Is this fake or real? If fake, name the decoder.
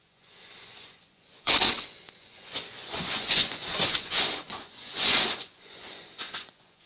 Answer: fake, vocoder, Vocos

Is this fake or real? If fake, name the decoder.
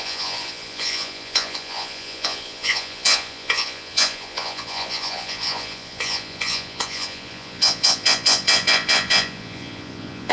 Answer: fake, vocoder, Vocos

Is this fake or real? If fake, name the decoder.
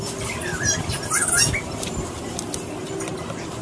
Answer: real